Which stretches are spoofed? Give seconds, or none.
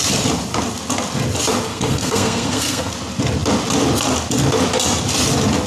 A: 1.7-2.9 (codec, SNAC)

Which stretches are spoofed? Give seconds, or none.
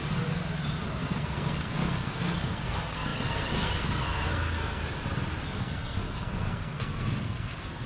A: 1.0-4.8 (codec, SNAC); 5.6-7.9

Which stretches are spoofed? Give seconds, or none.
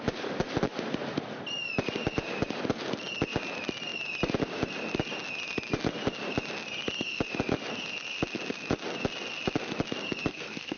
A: 10.3-10.8 (codec, SNAC)